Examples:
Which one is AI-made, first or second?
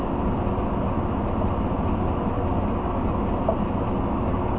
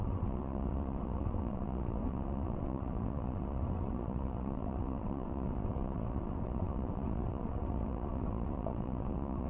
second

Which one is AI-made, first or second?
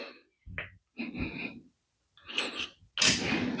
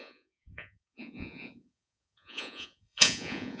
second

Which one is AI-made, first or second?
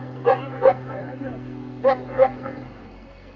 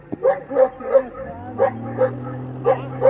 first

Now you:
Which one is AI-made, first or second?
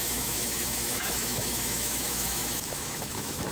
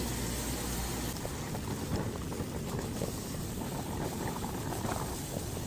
first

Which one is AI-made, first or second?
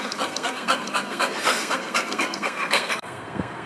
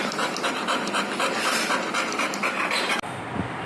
first